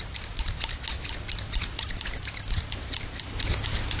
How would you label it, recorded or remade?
recorded